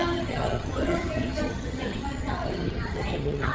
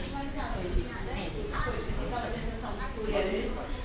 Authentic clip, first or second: second